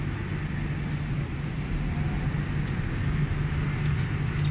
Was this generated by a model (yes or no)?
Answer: no